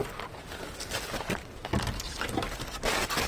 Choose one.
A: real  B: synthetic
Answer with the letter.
A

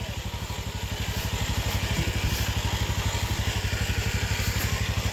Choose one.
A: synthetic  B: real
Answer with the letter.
B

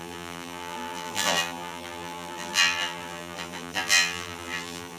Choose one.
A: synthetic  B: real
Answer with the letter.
A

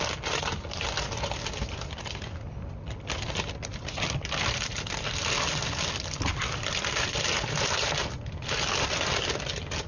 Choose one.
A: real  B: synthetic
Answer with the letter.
A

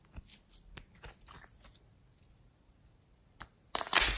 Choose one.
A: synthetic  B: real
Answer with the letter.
A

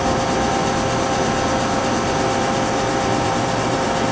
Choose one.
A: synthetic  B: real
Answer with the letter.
A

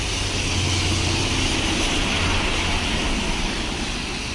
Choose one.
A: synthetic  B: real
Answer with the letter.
B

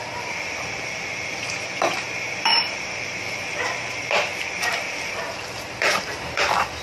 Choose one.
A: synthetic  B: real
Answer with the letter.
A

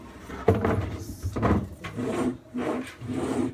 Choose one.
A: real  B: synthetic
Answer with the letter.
B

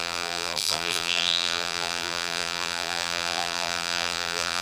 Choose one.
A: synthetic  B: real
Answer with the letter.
A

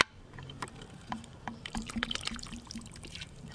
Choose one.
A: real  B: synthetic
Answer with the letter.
B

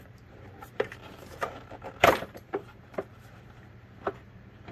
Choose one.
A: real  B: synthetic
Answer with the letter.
B